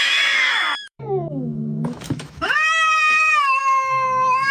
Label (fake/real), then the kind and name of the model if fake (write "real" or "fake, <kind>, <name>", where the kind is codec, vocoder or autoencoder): fake, autoencoder, DAC-VAE